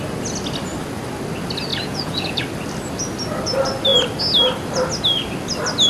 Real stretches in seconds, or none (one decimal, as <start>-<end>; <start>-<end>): 0.0-1.7; 2.4-5.9